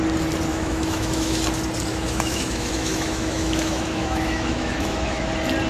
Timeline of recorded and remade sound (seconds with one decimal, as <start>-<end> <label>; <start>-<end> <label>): 0.0-0.5 recorded; 0.5-1.4 remade; 1.4-1.9 recorded; 1.9-5.3 remade; 5.3-5.7 recorded

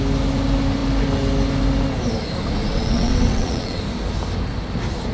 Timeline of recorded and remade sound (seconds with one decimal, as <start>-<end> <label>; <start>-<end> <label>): 0.0-2.7 recorded; 2.7-3.8 remade; 3.8-5.1 recorded

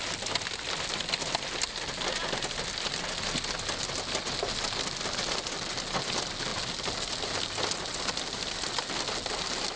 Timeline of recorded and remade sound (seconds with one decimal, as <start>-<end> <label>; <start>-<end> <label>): 0.0-9.8 recorded